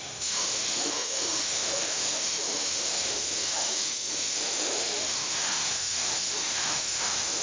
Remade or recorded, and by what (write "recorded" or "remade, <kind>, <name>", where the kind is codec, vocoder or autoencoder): remade, autoencoder, DAC-VAE